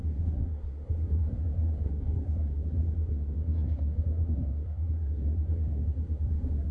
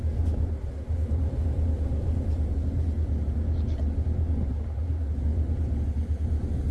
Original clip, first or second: second